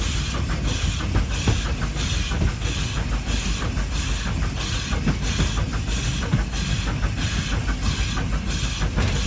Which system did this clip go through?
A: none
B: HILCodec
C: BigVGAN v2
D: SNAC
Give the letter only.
A